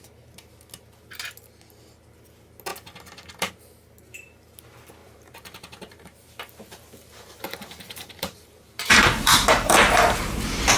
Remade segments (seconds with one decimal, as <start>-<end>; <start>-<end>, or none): 5.0-10.2